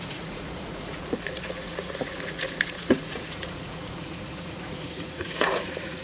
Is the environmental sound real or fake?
fake